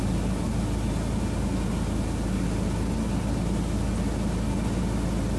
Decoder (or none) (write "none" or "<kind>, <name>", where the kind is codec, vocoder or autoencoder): none